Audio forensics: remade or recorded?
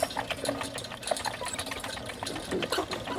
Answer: recorded